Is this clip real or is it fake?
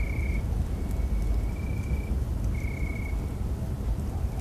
real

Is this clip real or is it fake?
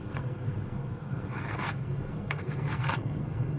fake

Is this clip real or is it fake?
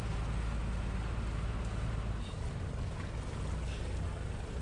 real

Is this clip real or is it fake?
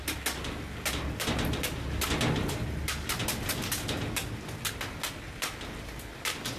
real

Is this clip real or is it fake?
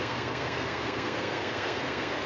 fake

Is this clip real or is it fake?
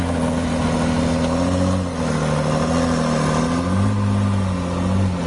real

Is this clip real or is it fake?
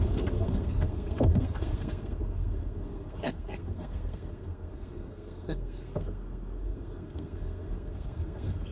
fake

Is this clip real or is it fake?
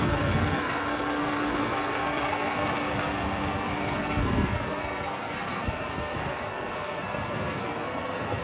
fake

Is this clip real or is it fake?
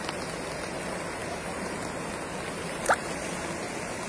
real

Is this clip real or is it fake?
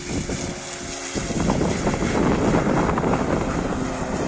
real